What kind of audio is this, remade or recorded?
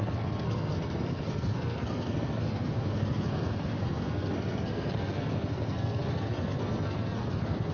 remade